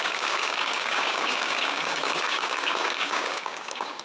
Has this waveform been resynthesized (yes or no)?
yes